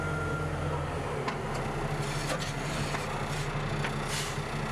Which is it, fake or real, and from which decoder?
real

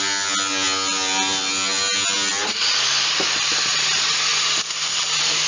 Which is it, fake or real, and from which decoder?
real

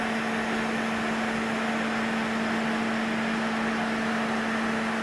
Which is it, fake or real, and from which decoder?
real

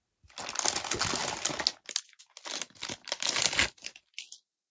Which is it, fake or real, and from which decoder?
real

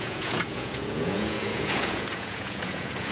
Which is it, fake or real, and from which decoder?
fake, vocoder, Vocos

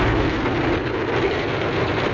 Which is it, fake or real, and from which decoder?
real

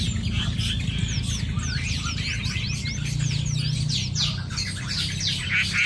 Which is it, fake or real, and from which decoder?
real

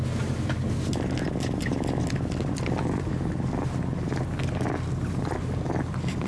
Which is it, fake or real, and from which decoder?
real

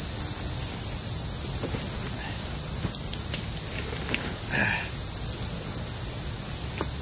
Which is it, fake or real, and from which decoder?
real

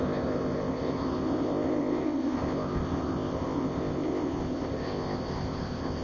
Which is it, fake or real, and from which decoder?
fake, codec, ZipCodec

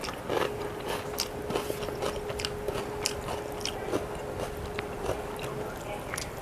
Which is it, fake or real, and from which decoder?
real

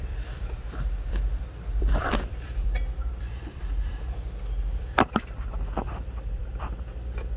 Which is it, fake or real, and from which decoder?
fake, vocoder, BigVGAN v2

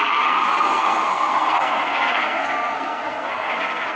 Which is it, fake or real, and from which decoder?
fake, codec, SNAC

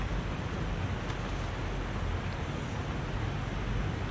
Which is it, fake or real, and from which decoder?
real